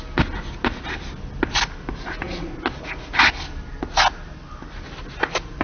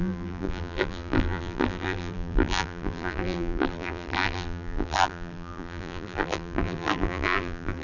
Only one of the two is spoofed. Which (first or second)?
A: second